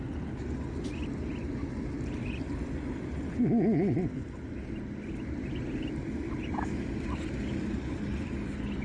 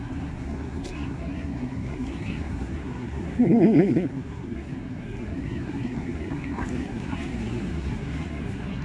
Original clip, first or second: first